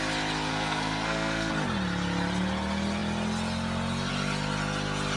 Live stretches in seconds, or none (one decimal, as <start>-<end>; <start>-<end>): 0.0-0.5; 1.5-5.2